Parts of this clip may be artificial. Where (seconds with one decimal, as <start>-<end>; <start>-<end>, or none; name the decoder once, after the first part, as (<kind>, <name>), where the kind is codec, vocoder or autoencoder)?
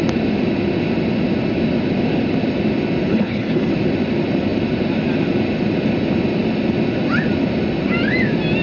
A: 3.1-3.7 (codec, HILCodec)